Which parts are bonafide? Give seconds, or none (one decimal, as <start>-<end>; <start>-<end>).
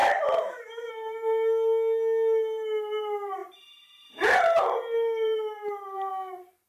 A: 0.9-3.4; 6.1-6.7